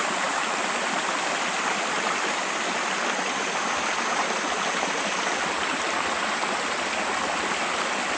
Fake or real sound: real